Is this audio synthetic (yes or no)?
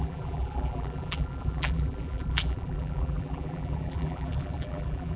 yes